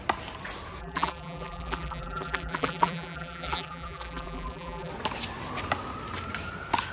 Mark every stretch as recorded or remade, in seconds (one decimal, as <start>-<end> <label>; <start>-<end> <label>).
0.0-0.8 recorded; 0.8-4.9 remade; 4.9-6.9 recorded